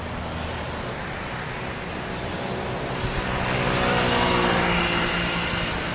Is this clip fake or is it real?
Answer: real